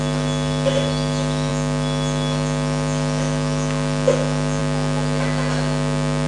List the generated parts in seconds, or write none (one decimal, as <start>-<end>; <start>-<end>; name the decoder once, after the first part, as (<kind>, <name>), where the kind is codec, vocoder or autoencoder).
none